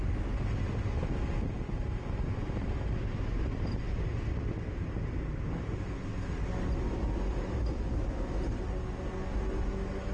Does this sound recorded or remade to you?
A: recorded